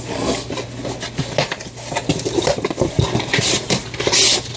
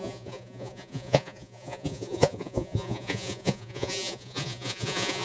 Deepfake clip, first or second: second